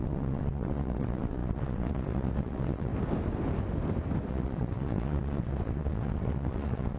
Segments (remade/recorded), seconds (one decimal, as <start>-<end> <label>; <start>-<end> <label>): 0.0-2.9 remade; 2.9-4.3 recorded; 4.3-7.0 remade